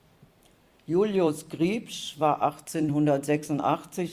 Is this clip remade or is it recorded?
remade